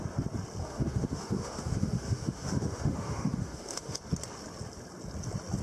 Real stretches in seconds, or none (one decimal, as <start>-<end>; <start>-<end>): 0.0-0.6; 4.0-5.6